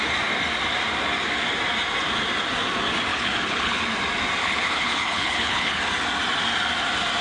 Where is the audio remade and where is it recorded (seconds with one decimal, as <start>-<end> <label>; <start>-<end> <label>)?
0.0-3.1 recorded; 3.1-3.8 remade; 3.8-4.4 recorded; 4.4-5.8 remade; 5.8-7.2 recorded